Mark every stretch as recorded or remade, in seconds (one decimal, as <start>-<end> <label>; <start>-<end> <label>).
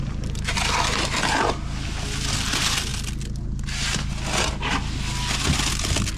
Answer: 0.0-6.2 recorded